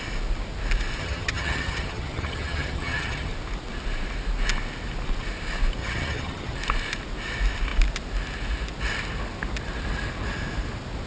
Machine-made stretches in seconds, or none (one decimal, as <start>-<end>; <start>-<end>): 1.0-3.3; 5.8-6.6